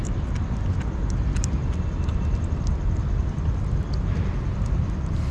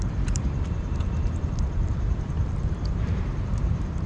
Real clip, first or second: first